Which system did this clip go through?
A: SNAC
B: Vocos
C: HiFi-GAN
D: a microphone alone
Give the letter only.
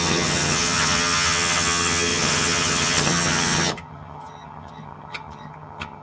C